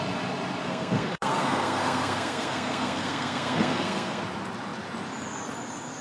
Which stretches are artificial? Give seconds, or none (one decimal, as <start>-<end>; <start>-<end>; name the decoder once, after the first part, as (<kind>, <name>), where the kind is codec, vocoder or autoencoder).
0.6-4.2 (codec, SNAC)